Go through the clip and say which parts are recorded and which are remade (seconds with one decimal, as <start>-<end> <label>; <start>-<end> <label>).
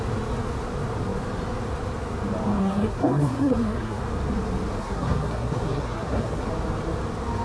0.0-2.5 recorded; 2.5-4.0 remade; 4.0-4.8 recorded; 4.8-6.5 remade; 6.5-7.4 recorded